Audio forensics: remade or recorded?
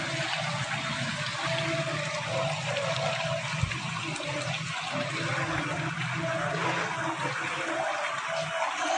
recorded